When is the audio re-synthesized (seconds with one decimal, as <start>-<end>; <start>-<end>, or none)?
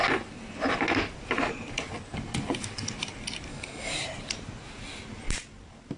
3.5-4.0